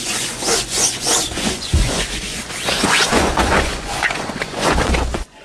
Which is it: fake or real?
fake